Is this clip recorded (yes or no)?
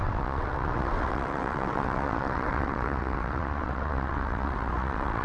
no